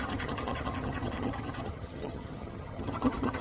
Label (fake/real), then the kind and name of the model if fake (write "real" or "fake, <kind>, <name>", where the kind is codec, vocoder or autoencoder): fake, vocoder, HiFi-GAN